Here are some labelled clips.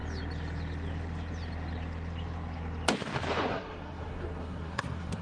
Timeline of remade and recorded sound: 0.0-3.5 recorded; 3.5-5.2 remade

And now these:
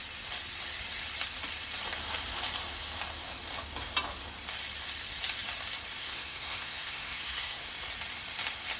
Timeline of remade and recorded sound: 0.0-6.0 recorded; 6.0-7.7 remade; 7.7-8.8 recorded